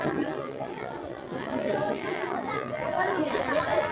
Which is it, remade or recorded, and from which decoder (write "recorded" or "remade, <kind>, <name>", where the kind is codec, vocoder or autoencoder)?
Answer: remade, vocoder, WaveNeXt